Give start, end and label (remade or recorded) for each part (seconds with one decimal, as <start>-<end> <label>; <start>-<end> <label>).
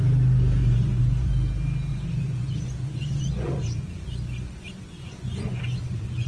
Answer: 0.0-0.6 recorded; 0.6-1.3 remade; 1.3-1.9 recorded; 1.9-3.6 remade; 3.6-5.0 recorded; 5.0-5.6 remade; 5.6-6.3 recorded